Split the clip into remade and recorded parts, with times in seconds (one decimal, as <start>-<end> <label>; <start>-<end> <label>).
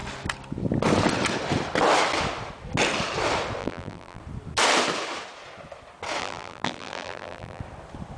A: 0.0-3.6 recorded; 3.6-4.2 remade; 4.2-6.2 recorded; 6.2-7.6 remade; 7.6-8.2 recorded